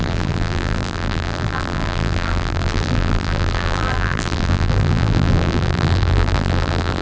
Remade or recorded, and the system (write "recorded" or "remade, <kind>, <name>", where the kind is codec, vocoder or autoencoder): remade, vocoder, BigVGAN v2